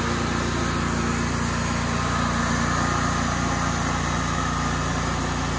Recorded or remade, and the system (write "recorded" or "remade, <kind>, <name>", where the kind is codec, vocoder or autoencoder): recorded